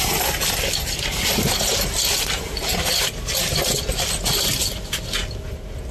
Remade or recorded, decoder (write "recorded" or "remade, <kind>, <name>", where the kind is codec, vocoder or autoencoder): recorded